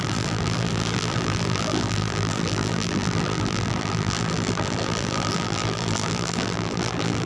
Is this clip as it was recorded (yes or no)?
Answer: no